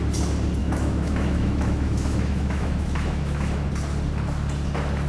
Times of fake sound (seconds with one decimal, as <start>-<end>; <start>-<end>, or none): 0.6-3.7

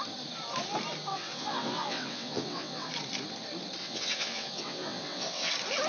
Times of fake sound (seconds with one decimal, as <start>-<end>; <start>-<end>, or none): 1.1-2.9; 3.8-5.5

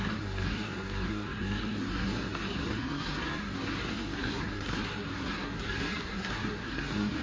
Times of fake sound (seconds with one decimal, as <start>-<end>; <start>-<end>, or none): 0.0-7.2

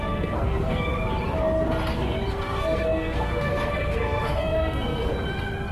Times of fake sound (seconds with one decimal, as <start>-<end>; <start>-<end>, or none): 0.0-0.9; 2.3-5.1

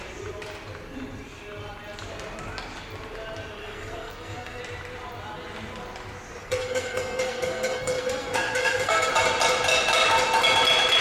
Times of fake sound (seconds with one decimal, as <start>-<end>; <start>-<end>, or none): 3.6-4.6; 6.4-9.1